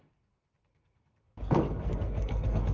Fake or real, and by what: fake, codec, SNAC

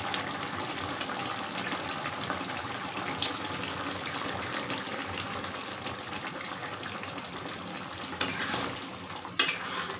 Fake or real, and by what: real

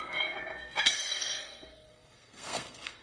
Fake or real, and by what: fake, codec, SNAC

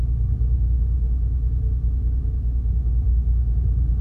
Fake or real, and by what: real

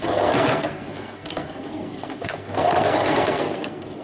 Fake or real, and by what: fake, codec, SNAC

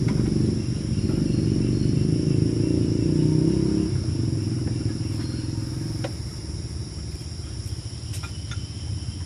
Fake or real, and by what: real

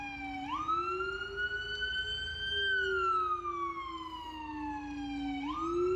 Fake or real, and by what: real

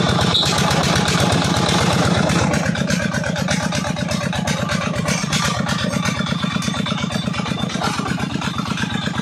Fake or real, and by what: fake, vocoder, BigVGAN v2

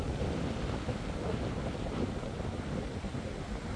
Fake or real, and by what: real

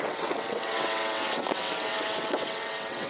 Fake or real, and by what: fake, vocoder, WaveNeXt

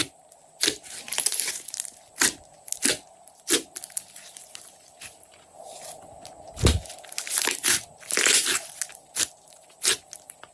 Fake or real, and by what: real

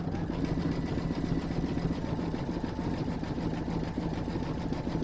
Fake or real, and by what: real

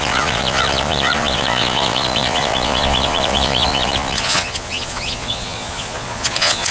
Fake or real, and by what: fake, vocoder, Vocos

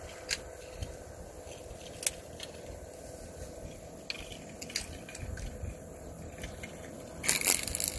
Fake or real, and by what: real